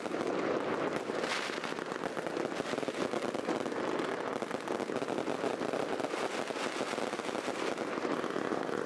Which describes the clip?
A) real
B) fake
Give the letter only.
A